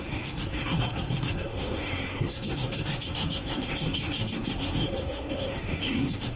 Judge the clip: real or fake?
fake